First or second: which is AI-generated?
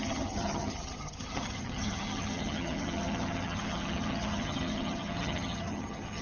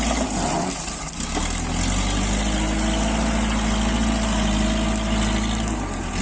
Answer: first